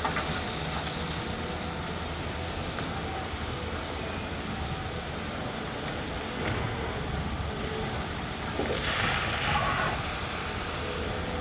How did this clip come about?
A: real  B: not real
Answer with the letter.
A